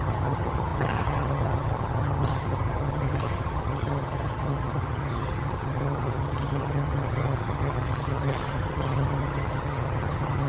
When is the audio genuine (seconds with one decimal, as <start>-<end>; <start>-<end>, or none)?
none